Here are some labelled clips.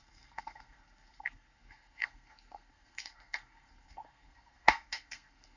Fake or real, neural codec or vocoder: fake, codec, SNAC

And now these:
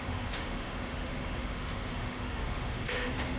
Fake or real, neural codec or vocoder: fake, autoencoder, DAC-VAE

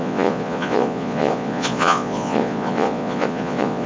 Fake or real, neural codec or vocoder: fake, vocoder, Vocos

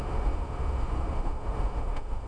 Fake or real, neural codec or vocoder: fake, autoencoder, DAC-VAE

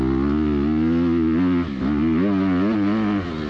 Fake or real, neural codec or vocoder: real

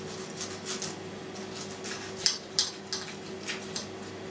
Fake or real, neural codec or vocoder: real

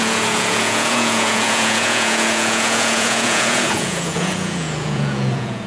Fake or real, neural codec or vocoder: fake, vocoder, Vocos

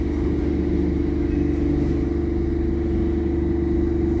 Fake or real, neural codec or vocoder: real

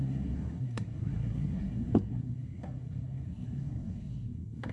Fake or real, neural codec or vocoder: fake, codec, SNAC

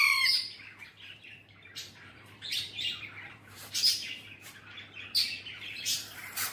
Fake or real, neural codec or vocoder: fake, vocoder, BigVGAN v2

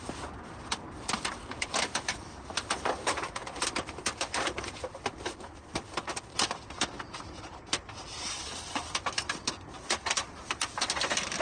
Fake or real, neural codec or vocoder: real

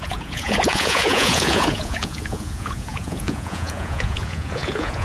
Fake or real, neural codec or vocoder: fake, vocoder, Vocos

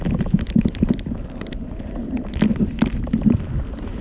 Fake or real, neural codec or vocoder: real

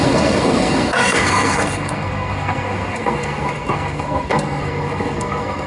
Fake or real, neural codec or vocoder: fake, codec, SNAC